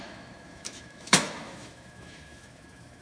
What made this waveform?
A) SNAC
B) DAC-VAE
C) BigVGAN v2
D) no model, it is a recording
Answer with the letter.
B